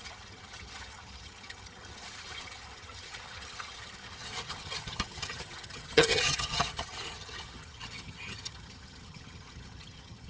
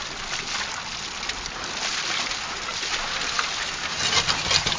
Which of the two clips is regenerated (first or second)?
first